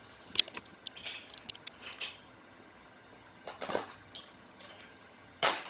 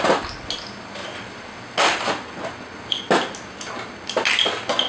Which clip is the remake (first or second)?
first